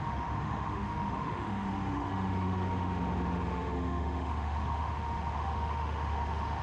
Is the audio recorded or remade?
remade